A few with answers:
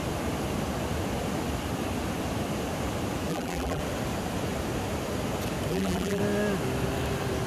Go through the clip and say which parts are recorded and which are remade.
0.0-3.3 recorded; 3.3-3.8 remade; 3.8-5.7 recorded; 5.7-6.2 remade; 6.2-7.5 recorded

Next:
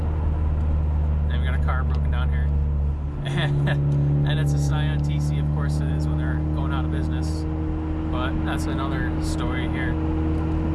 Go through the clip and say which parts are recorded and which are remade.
0.0-10.7 recorded

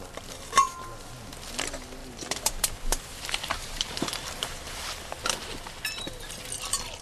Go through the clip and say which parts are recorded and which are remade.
0.0-2.0 recorded; 2.0-5.2 remade; 5.2-7.0 recorded

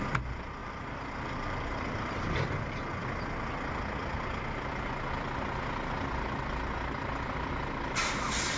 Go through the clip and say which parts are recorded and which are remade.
0.0-0.6 recorded; 0.6-2.5 remade; 2.5-8.6 recorded

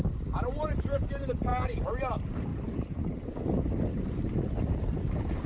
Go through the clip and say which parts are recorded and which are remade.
0.0-2.5 recorded; 2.5-5.5 remade

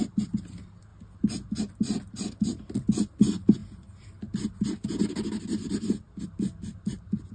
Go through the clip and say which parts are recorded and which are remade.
0.0-7.3 recorded

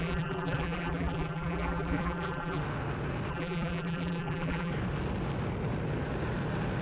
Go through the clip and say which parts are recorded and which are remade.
0.0-2.6 remade; 2.6-3.3 recorded; 3.3-4.7 remade; 4.7-6.8 recorded

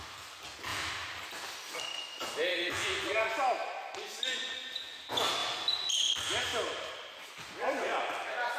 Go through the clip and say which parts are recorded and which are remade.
0.0-3.6 remade; 3.6-4.7 recorded; 4.7-5.4 remade; 5.4-5.9 recorded; 5.9-6.5 remade; 6.5-7.4 recorded; 7.4-8.6 remade